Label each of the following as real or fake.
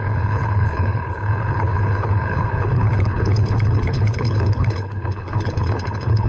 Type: fake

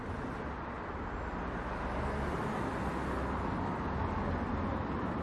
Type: real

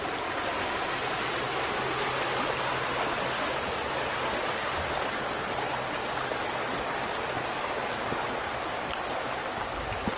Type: real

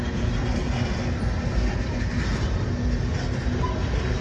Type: real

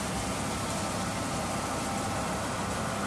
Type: real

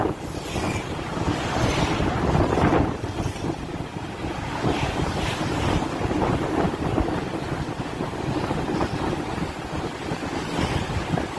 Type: real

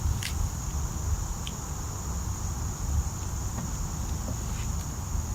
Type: real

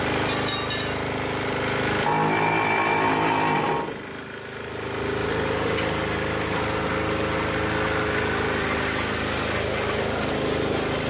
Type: real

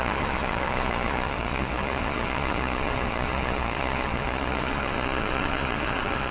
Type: fake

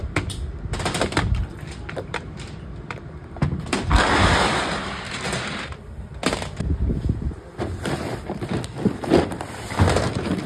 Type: fake